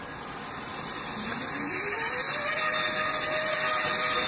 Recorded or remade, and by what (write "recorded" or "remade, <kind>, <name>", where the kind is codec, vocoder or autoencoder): recorded